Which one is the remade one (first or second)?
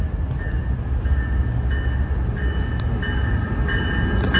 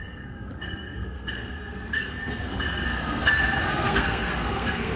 second